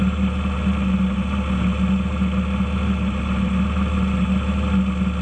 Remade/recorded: recorded